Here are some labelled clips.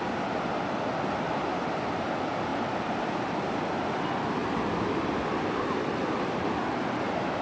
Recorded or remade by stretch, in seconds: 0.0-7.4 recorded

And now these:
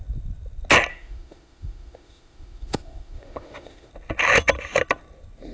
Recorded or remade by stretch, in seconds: 0.0-0.9 recorded; 0.9-3.9 remade; 3.9-5.5 recorded

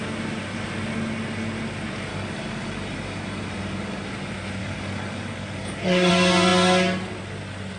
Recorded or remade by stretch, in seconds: 0.0-2.1 recorded; 2.1-4.1 remade; 4.1-4.6 recorded; 4.6-6.1 remade; 6.1-7.8 recorded

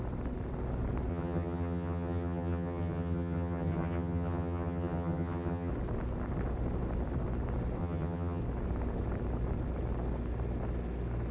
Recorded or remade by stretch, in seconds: 0.0-1.1 recorded; 1.1-5.7 remade; 5.7-7.8 recorded; 7.8-8.4 remade; 8.4-11.3 recorded

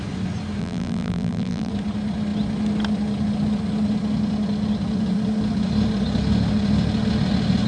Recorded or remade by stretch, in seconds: 0.0-0.6 recorded; 0.6-1.7 remade; 1.7-7.7 recorded

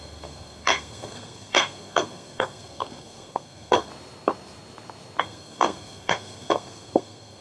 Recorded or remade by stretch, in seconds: 0.0-3.9 remade; 3.9-5.2 recorded; 5.2-7.4 remade

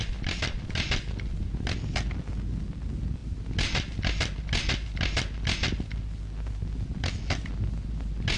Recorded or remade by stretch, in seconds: 0.0-1.5 remade; 1.5-8.4 recorded

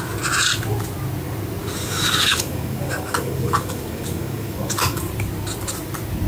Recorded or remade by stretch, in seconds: 0.0-1.6 recorded; 1.6-5.1 remade; 5.1-6.3 recorded